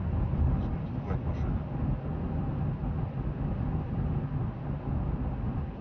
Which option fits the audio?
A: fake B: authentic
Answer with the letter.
B